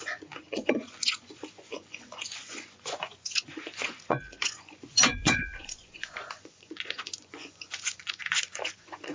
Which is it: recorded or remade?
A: remade